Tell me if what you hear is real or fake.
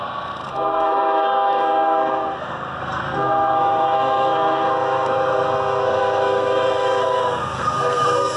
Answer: fake